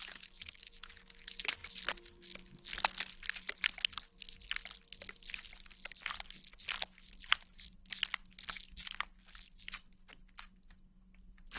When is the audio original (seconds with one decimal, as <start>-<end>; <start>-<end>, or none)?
0.0-11.6